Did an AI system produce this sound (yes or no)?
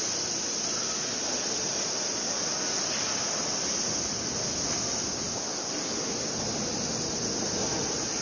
no